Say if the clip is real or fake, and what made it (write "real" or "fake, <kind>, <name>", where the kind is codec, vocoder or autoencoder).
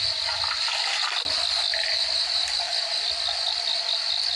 real